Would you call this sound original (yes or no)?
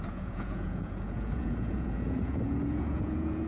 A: no